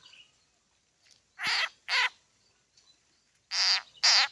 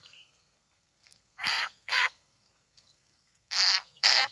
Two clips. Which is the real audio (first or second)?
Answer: first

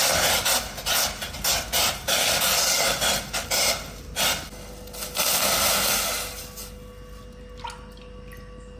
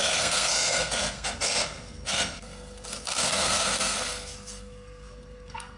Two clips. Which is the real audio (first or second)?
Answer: first